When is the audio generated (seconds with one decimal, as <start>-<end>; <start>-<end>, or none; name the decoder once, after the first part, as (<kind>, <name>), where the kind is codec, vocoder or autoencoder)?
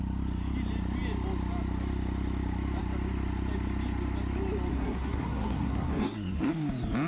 4.7-6.5 (codec, SNAC)